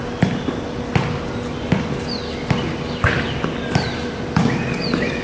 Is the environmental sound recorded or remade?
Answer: recorded